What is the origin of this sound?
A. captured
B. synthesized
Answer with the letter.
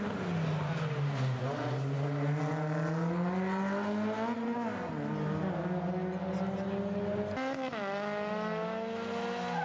A